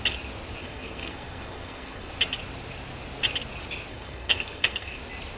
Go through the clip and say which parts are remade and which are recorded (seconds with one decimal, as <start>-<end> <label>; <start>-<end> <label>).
0.0-0.6 recorded; 0.6-2.1 remade; 2.1-3.9 recorded; 3.9-5.0 remade; 5.0-5.4 recorded